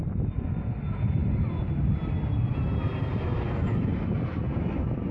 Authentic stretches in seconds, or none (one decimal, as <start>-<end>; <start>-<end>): 0.0-5.1